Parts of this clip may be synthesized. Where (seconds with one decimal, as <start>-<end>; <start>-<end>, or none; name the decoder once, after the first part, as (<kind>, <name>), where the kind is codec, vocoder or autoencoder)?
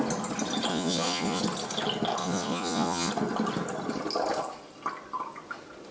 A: 0.7-1.4 (vocoder, Vocos); 2.2-3.1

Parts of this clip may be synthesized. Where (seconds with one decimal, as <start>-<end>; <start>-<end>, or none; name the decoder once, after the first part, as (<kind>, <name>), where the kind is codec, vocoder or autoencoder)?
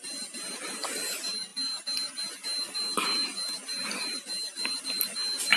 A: none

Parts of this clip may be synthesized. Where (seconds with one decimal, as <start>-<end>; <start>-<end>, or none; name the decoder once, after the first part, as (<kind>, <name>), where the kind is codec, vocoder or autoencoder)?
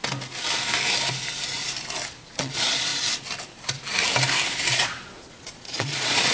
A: 2.1-2.9 (vocoder, Vocos); 4.7-6.3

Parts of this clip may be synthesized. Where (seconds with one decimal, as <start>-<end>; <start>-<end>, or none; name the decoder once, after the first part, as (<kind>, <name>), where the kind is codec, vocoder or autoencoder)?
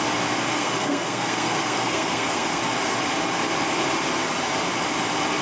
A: 0.5-2.6 (codec, SNAC)